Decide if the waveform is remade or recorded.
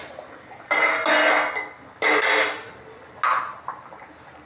recorded